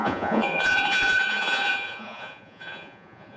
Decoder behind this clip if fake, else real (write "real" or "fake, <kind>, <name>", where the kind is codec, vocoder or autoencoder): fake, vocoder, Vocos